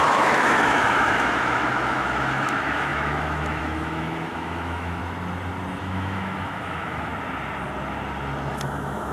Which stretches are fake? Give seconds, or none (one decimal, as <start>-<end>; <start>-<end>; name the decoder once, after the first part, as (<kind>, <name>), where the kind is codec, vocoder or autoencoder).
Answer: 0.0-5.0 (autoencoder, DAC-VAE); 5.8-7.1; 8.5-9.1